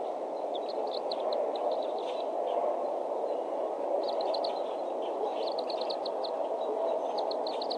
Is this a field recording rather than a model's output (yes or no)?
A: yes